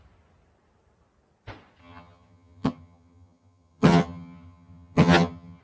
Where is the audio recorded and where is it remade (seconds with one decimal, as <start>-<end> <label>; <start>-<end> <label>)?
0.0-1.8 recorded; 1.8-5.6 remade